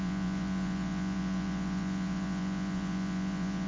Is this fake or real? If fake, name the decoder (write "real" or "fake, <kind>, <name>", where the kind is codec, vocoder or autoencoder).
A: fake, vocoder, Vocos